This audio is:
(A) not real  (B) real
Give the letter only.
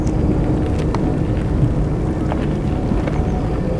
B